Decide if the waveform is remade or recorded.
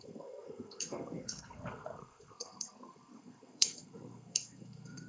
remade